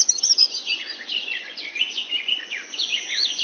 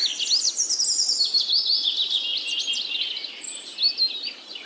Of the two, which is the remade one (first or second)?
first